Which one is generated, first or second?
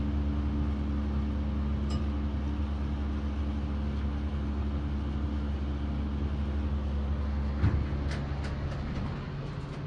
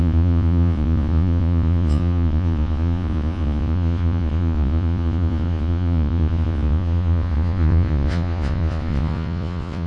second